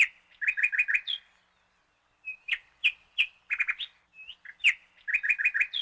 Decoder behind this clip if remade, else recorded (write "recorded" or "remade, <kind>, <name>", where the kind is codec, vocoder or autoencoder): recorded